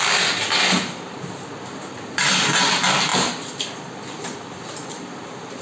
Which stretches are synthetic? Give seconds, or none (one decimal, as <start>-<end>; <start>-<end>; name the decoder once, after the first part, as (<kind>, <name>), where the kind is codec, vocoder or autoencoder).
none